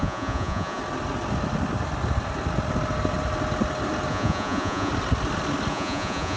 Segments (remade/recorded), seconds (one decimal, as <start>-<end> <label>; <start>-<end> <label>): 0.0-0.8 remade; 0.8-4.1 recorded; 4.1-4.9 remade; 4.9-5.7 recorded; 5.7-6.4 remade